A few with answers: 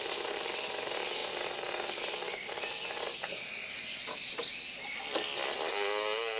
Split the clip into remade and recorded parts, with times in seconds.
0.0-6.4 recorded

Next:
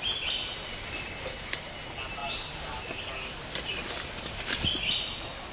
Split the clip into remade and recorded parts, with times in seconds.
0.0-2.2 recorded; 2.2-4.7 remade; 4.7-5.5 recorded

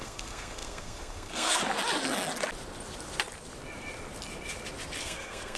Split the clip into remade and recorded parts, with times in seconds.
0.0-1.6 remade; 1.6-5.0 recorded; 5.0-5.6 remade

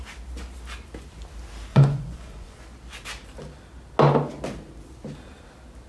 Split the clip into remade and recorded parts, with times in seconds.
0.0-1.7 recorded; 1.7-2.6 remade; 2.6-5.9 recorded

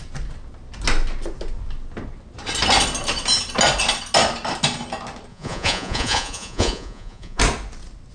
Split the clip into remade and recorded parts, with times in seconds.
0.0-5.3 recorded; 5.3-7.4 remade; 7.4-8.1 recorded

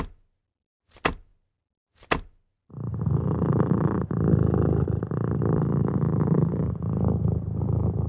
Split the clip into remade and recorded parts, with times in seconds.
0.0-8.1 recorded